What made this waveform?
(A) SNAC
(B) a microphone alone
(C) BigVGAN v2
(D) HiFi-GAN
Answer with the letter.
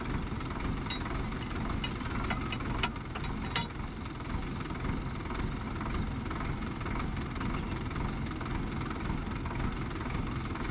B